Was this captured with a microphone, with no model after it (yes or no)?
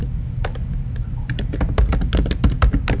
yes